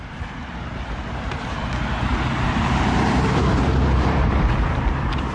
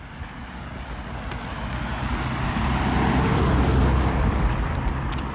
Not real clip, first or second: first